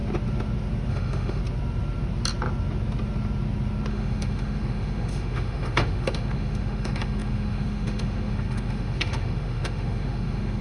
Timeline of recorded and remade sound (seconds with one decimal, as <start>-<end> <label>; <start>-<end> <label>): 0.0-0.9 recorded; 0.9-1.4 remade; 1.4-3.9 recorded; 3.9-10.6 remade